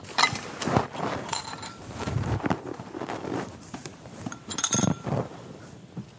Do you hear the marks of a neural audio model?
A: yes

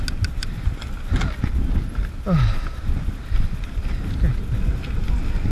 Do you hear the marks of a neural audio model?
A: no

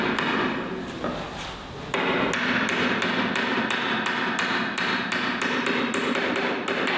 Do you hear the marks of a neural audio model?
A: no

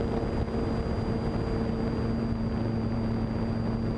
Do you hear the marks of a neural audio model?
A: no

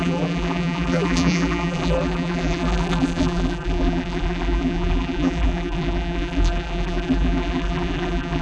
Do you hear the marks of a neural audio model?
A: yes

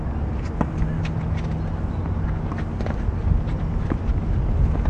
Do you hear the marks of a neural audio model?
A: no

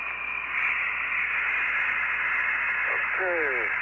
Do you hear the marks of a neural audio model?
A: no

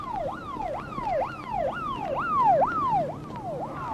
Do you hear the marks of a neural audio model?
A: no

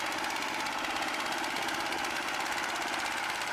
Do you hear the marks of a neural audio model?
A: yes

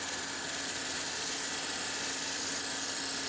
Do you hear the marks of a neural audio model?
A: yes